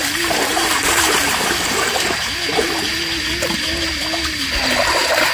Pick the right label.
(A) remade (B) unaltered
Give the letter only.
A